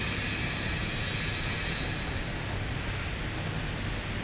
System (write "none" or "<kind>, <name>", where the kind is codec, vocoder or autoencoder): none